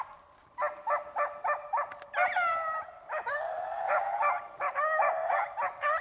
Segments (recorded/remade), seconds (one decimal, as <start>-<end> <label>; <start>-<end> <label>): 0.0-3.3 recorded; 3.3-4.4 remade; 4.4-6.0 recorded